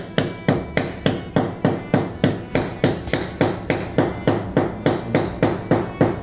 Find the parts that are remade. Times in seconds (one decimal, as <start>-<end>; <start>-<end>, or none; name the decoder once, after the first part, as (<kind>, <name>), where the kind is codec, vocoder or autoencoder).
2.5-3.2 (vocoder, BigVGAN v2)